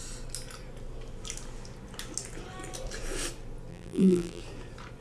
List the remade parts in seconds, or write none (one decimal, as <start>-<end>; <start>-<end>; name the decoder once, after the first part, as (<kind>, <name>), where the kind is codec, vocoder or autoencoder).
3.7-4.4 (vocoder, BigVGAN v2)